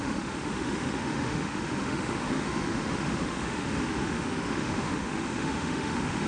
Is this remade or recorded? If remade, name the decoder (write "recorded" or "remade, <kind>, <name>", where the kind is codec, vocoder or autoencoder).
remade, autoencoder, DAC-VAE